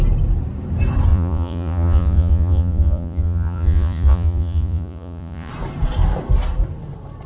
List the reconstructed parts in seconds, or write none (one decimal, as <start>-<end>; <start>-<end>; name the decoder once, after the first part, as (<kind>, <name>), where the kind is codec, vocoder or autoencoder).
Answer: 1.1-5.5 (vocoder, Vocos)